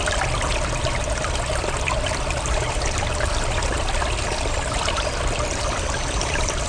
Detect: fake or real real